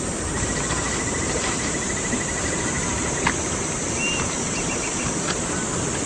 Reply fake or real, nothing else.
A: real